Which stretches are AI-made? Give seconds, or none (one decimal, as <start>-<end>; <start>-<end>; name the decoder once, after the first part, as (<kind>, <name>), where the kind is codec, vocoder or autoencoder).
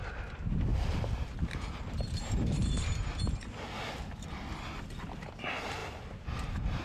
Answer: 0.7-2.8 (vocoder, BigVGAN v2); 5.8-6.8